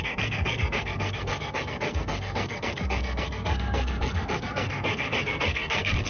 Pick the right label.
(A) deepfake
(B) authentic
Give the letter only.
A